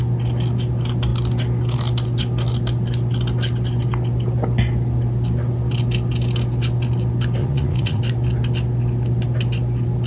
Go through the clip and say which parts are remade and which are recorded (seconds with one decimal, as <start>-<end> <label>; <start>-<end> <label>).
0.0-7.4 recorded; 7.4-8.0 remade; 8.0-10.1 recorded